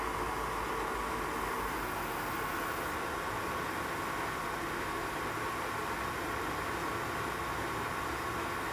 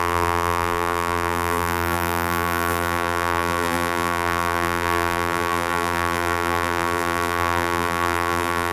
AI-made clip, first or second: second